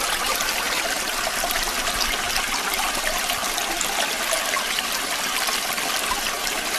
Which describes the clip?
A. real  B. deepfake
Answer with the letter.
A